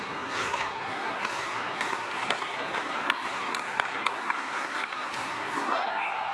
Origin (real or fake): fake